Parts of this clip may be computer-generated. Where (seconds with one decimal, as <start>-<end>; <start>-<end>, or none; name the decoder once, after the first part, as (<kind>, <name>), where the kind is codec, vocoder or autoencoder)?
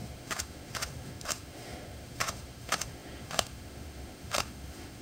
0.0-5.0 (autoencoder, DAC-VAE)